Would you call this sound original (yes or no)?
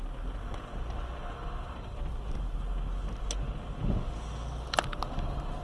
yes